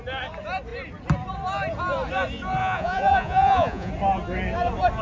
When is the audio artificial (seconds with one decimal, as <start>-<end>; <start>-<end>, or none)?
2.6-3.9